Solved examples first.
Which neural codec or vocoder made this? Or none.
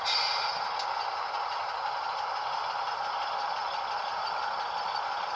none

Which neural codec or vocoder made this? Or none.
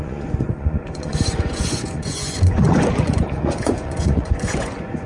vocoder, Vocos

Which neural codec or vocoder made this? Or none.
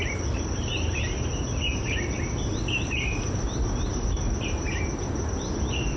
none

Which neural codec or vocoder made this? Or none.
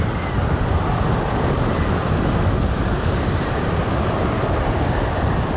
none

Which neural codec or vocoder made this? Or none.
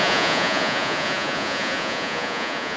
vocoder, Vocos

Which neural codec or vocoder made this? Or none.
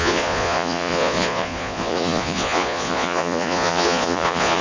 vocoder, Vocos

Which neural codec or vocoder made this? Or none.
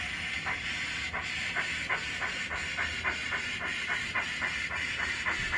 none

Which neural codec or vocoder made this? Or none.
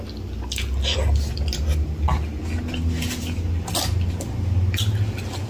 none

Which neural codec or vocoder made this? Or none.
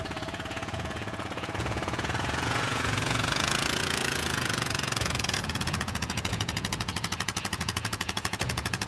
vocoder, Vocos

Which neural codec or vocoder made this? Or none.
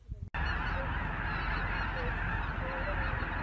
none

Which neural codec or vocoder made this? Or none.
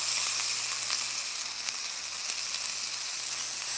none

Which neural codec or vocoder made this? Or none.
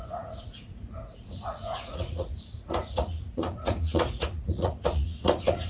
vocoder, Vocos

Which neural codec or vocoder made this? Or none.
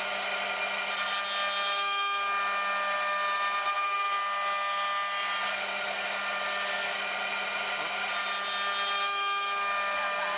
none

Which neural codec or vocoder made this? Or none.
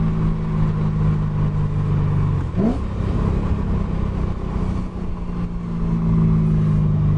none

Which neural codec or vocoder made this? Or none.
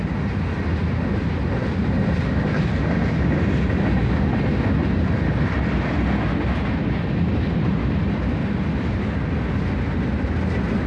none